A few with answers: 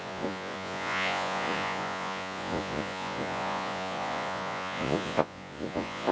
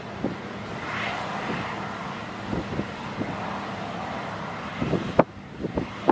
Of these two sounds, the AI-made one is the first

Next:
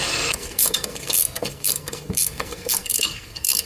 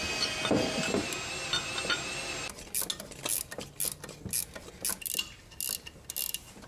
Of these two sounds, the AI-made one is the first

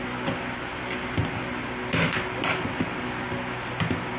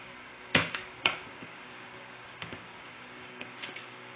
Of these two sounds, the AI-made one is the second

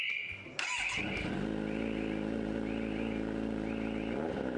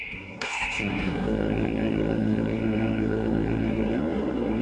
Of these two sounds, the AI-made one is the second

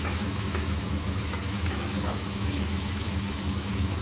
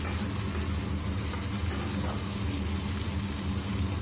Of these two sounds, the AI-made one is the first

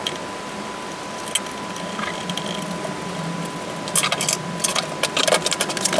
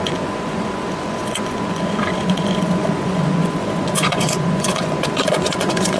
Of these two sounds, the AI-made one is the second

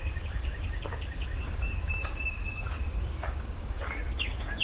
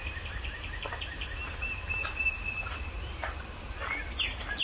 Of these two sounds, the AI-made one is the first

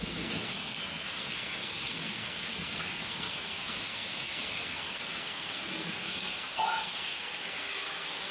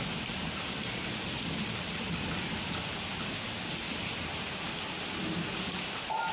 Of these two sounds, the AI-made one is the first